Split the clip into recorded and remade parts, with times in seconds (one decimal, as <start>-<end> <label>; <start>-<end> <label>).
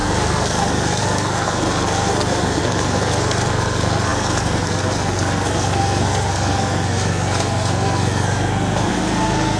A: 0.0-9.6 remade